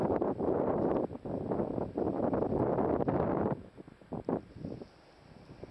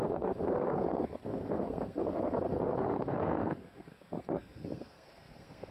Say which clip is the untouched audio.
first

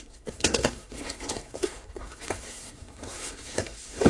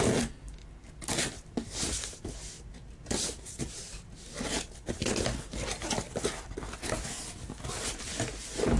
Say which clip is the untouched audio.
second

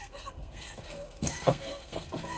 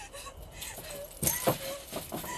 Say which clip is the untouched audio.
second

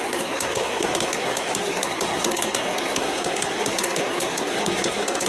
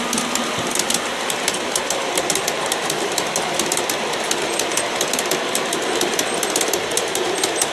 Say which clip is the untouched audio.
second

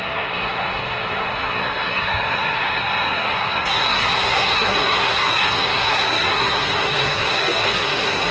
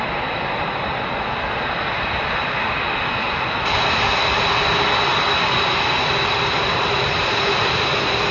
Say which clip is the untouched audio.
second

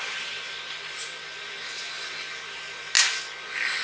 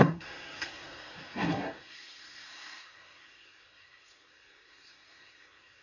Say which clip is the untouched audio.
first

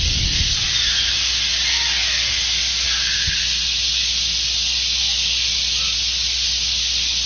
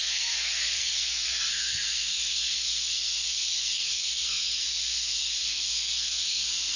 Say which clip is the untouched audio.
first